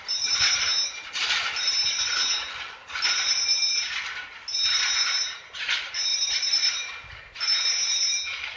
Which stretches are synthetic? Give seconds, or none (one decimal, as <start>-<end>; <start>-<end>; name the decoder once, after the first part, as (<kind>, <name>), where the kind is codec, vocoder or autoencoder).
6.1-6.9 (vocoder, BigVGAN v2)